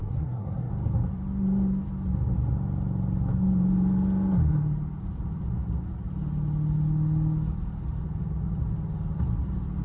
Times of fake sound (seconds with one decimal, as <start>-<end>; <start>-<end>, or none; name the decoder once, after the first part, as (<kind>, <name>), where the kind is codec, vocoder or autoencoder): 0.0-0.7 (codec, SNAC)